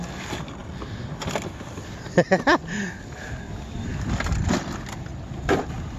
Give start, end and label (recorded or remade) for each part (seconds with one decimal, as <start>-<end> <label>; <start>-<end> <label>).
0.0-3.9 recorded; 3.9-4.5 remade; 4.5-6.0 recorded